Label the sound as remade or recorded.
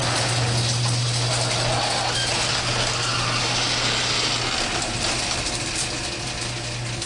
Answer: recorded